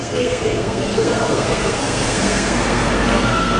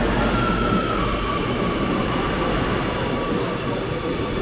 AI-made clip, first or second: first